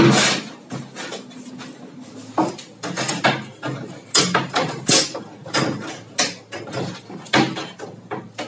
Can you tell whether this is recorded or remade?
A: recorded